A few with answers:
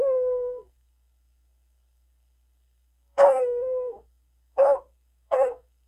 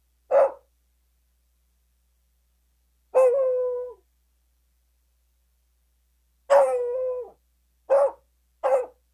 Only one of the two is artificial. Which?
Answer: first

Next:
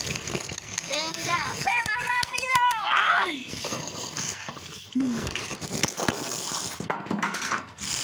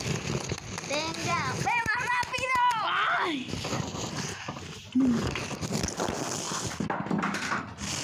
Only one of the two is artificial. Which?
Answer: first